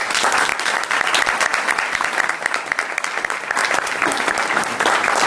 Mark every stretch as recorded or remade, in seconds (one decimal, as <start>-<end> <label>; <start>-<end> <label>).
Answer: 0.0-0.5 recorded; 0.5-1.1 remade; 1.1-3.6 recorded; 3.6-5.3 remade